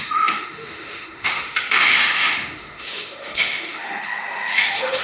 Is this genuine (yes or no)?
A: no